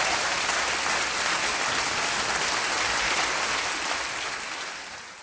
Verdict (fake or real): real